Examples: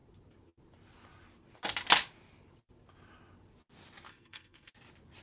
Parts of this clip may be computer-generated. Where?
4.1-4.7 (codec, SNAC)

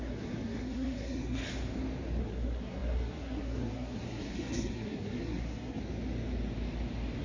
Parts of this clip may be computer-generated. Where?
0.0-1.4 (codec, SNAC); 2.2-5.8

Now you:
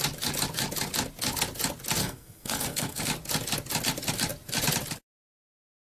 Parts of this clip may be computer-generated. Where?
2.0-3.0 (codec, SNAC)